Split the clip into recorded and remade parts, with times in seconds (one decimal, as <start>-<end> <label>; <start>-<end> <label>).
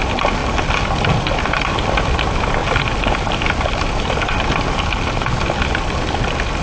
0.0-6.6 recorded